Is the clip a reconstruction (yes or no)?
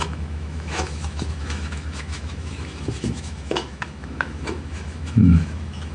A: yes